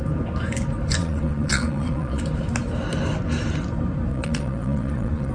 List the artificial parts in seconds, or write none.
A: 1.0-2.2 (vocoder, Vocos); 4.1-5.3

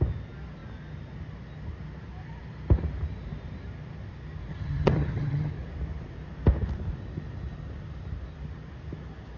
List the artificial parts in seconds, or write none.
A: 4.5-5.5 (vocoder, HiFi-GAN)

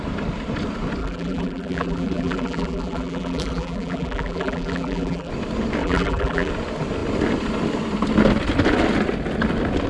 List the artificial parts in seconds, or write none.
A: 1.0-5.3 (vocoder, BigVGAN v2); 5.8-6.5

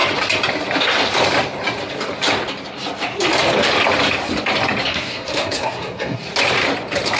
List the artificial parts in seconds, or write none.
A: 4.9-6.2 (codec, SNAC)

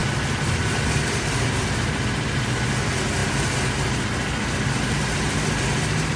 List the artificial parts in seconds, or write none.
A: none